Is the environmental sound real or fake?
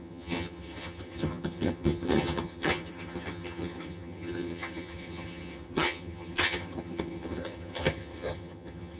fake